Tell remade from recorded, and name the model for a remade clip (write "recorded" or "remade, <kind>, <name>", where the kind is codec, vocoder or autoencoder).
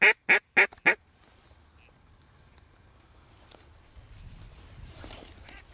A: recorded